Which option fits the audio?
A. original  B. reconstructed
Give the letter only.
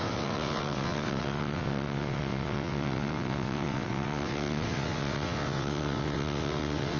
B